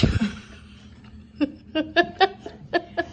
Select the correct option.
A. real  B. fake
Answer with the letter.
B